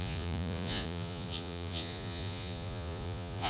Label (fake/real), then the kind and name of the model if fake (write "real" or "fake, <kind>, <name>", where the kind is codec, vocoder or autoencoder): fake, vocoder, Vocos